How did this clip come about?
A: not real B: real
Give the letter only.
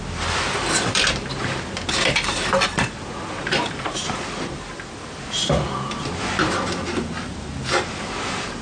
B